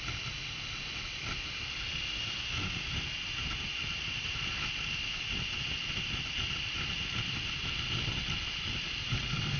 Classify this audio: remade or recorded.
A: recorded